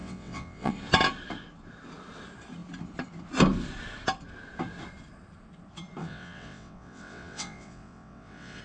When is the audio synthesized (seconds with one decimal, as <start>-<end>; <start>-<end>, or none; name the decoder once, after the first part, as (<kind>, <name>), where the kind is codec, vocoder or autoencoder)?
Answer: 0.0-0.7 (vocoder, WaveNeXt); 6.0-8.6